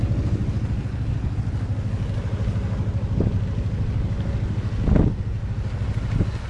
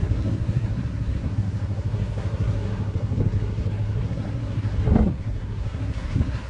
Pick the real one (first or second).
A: first